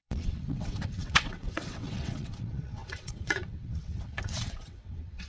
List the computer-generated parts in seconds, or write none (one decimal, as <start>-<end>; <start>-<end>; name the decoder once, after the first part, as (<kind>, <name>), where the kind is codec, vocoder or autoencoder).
0.0-5.3 (vocoder, WaveNeXt)